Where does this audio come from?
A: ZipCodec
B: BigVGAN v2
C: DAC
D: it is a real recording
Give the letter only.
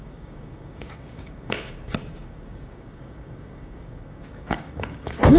C